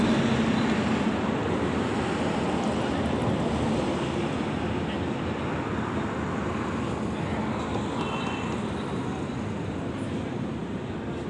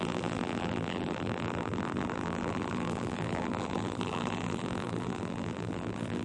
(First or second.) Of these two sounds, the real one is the first